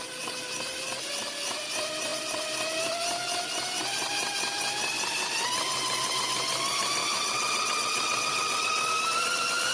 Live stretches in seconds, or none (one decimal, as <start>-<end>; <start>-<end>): 0.0-7.0; 8.9-9.7